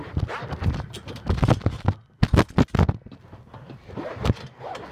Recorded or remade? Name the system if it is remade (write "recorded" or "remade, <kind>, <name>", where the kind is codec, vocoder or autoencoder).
recorded